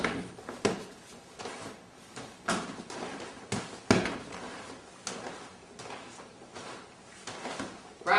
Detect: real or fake real